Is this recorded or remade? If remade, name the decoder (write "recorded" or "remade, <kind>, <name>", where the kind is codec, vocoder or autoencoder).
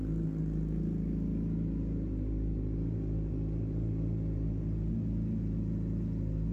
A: recorded